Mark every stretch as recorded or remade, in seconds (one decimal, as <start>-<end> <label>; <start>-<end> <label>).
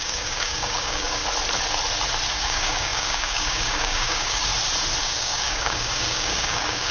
0.0-1.2 remade; 1.2-2.3 recorded; 2.3-4.5 remade; 4.5-5.0 recorded; 5.0-6.9 remade